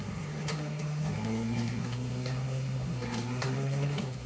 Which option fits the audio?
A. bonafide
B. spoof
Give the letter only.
B